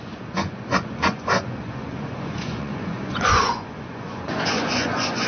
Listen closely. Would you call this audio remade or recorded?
remade